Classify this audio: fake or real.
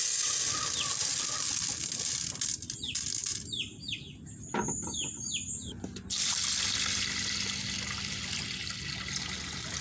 real